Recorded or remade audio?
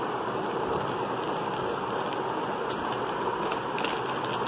recorded